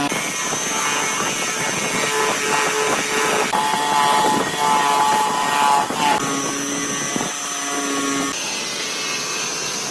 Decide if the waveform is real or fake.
real